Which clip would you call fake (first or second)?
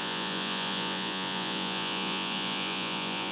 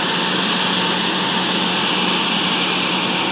first